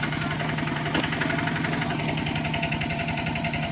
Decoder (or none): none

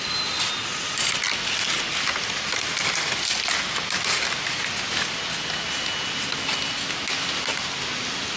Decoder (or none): none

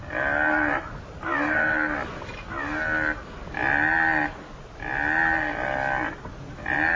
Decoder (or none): none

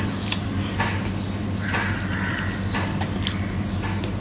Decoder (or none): none